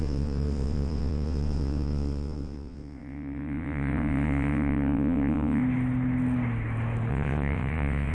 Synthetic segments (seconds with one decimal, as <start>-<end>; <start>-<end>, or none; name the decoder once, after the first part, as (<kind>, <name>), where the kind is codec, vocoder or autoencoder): 0.0-5.6 (vocoder, WaveNeXt); 7.1-8.1